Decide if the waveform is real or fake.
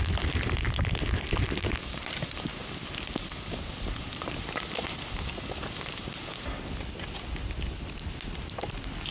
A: real